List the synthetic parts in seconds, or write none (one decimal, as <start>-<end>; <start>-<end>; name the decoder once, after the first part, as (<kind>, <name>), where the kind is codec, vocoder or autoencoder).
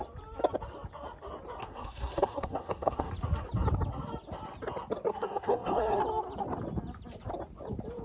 1.6-3.1 (codec, SNAC); 5.1-6.0